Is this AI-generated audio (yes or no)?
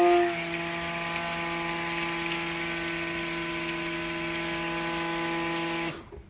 no